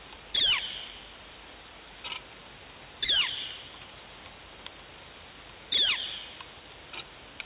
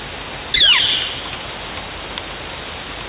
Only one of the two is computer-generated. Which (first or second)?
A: first